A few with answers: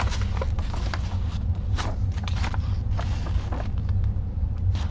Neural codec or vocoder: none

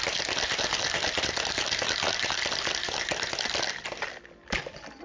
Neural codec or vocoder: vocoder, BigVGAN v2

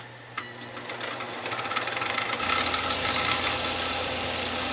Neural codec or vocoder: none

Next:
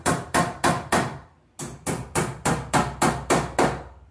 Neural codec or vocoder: none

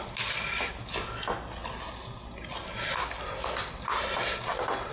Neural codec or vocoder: none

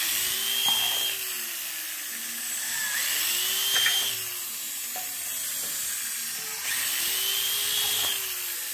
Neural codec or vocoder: none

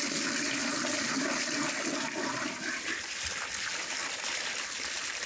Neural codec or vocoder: none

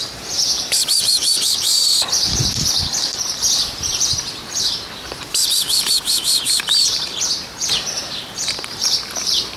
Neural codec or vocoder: vocoder, BigVGAN v2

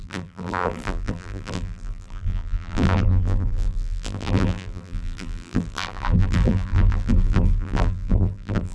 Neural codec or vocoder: vocoder, BigVGAN v2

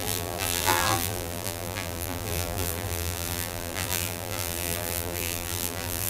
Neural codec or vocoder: vocoder, BigVGAN v2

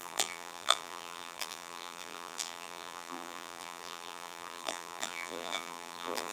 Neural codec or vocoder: vocoder, BigVGAN v2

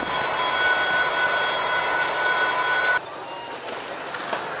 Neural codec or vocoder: none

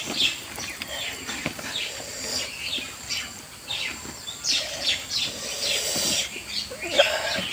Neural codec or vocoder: none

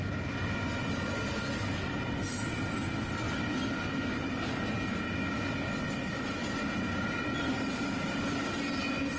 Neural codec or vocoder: none